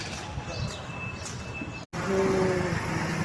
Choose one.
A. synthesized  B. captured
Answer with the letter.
B